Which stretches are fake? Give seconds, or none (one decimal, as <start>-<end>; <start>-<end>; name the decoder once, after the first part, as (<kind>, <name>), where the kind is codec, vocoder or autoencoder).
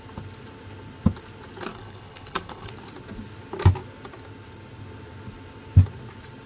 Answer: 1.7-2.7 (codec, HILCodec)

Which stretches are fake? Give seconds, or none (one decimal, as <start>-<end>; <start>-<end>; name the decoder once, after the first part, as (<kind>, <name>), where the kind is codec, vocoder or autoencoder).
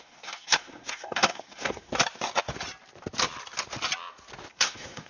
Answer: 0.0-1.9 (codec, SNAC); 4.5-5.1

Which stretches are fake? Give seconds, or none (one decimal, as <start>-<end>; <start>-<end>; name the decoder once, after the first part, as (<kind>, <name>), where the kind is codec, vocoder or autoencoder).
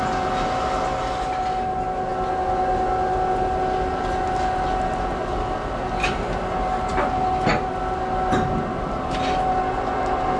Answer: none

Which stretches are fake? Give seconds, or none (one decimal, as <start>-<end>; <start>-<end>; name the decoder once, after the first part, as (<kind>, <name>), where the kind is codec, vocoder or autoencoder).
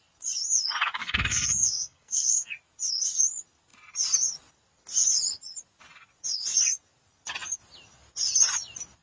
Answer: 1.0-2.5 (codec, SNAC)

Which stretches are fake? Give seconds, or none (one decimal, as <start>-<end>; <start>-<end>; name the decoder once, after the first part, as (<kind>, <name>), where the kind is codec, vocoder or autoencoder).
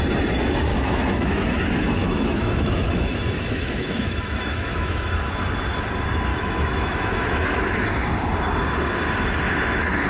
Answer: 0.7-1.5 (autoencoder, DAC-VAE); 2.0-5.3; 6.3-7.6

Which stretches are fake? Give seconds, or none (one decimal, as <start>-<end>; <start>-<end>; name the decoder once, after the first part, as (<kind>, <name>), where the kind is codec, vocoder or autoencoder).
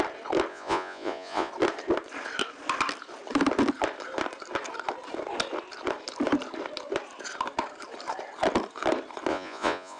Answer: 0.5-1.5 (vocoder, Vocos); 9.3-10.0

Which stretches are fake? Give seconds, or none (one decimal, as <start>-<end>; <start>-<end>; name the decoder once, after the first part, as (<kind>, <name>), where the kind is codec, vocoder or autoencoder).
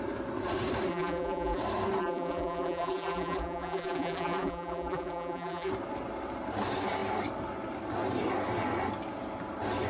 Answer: 0.9-1.6 (vocoder, BigVGAN v2); 2.0-5.7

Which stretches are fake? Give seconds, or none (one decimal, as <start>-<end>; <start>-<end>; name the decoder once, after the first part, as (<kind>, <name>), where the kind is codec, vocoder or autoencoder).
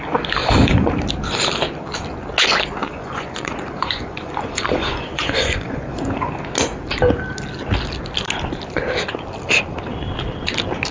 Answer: 0.4-0.9 (vocoder, Vocos); 2.8-6.3